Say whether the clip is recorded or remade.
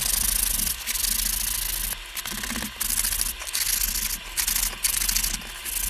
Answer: recorded